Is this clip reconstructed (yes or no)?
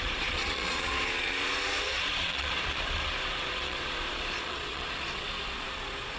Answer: yes